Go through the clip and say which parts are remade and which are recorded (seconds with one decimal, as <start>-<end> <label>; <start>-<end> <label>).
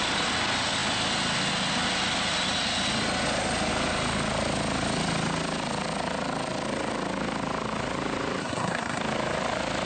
0.0-8.4 recorded; 8.4-9.0 remade; 9.0-9.9 recorded